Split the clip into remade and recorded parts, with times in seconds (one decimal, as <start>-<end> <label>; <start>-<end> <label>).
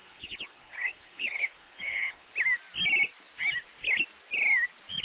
0.0-2.3 remade; 2.3-5.0 recorded